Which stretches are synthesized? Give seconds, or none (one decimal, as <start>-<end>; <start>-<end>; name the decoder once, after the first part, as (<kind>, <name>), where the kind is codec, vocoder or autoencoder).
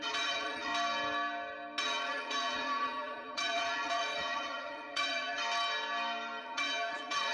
0.0-0.7 (vocoder, Vocos); 1.8-5.4; 6.4-7.3